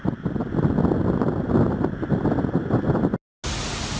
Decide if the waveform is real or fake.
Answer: real